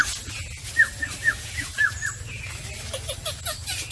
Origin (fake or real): real